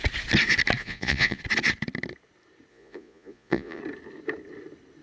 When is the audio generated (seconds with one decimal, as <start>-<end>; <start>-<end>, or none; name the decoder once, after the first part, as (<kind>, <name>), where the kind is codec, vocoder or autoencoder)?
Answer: 0.8-1.4 (vocoder, Vocos); 2.7-3.8